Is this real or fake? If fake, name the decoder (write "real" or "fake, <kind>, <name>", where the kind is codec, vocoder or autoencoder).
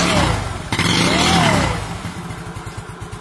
real